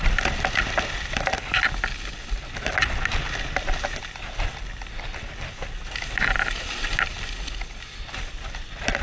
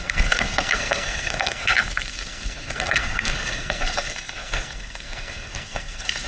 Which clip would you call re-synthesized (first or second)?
second